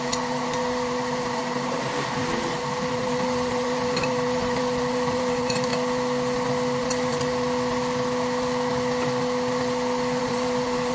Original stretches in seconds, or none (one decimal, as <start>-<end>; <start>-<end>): 5.7-6.8; 7.3-10.2